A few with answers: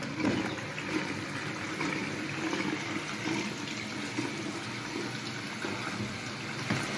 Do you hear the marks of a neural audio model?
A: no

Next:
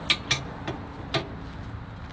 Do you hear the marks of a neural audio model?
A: no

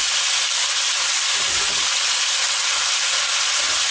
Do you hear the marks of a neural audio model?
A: no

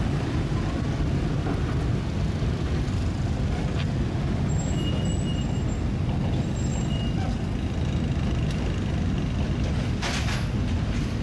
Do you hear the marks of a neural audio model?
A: no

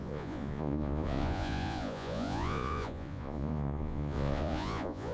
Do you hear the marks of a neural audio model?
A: yes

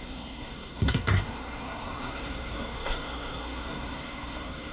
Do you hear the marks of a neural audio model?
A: yes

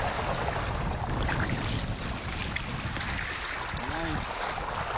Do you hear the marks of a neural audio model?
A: no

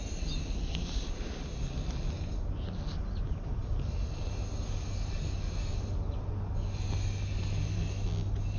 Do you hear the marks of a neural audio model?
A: no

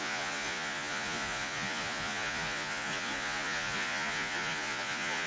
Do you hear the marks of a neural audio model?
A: yes